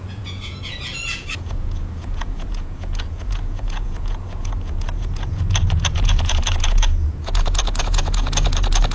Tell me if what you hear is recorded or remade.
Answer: remade